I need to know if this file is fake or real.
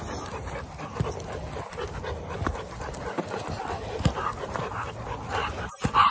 real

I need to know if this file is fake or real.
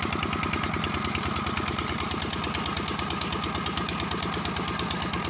real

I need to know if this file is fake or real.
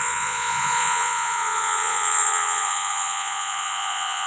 fake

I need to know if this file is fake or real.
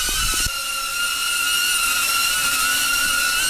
real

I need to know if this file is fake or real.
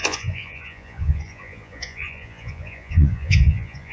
fake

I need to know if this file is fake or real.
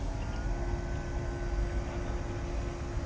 real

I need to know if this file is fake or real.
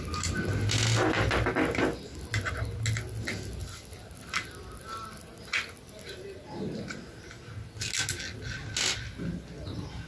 real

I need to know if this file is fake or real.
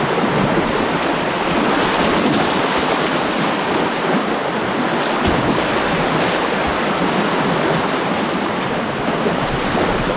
real